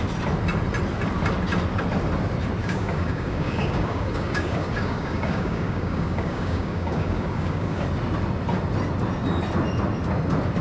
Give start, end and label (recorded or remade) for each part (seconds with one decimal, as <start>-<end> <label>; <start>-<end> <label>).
0.0-2.6 recorded; 2.6-7.8 remade; 7.8-10.6 recorded